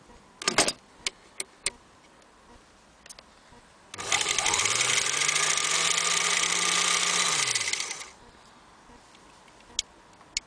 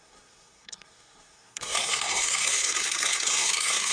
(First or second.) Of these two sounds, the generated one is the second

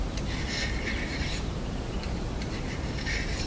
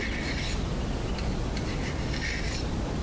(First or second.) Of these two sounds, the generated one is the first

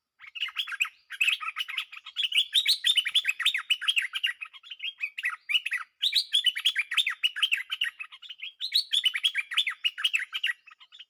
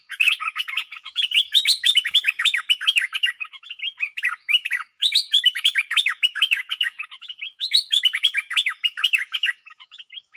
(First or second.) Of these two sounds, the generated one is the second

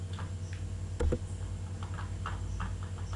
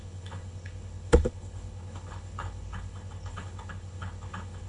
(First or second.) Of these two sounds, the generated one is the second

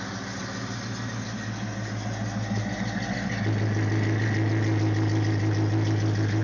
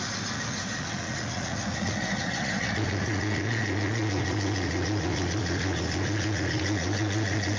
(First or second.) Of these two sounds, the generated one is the second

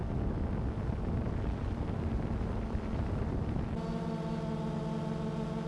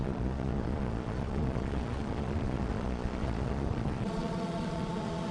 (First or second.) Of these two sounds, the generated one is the second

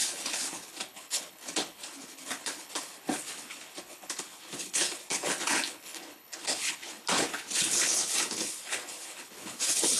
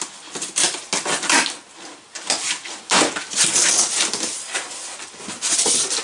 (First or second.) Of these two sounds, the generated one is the first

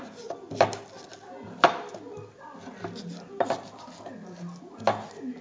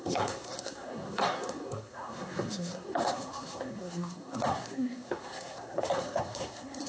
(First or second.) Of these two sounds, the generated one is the second